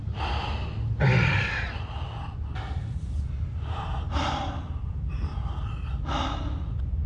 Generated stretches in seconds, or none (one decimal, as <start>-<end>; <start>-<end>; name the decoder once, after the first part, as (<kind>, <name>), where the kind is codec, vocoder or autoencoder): none